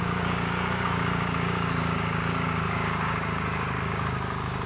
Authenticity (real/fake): fake